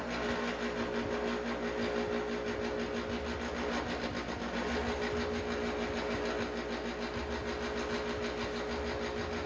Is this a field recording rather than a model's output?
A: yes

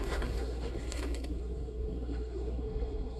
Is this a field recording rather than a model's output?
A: no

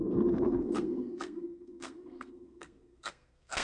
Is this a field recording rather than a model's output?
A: no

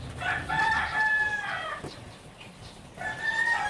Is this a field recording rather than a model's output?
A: yes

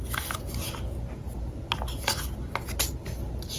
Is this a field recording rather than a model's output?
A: yes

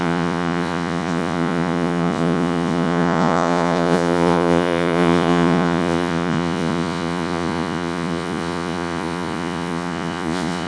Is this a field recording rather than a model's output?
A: no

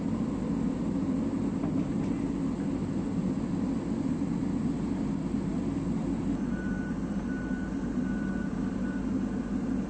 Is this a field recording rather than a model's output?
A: yes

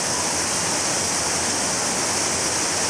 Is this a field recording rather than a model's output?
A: yes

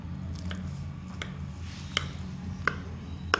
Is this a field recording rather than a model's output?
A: yes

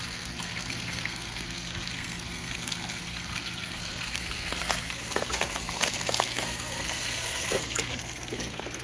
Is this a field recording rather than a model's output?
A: no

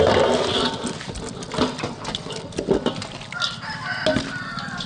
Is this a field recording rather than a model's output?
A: yes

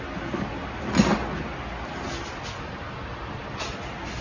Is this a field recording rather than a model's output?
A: yes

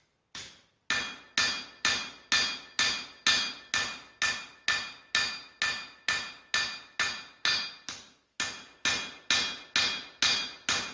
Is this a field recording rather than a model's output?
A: yes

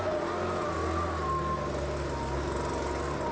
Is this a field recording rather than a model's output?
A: yes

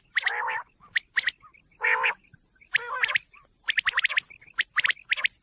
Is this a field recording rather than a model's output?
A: yes